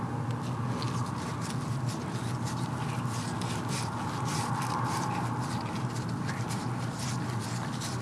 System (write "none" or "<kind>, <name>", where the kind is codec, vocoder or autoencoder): none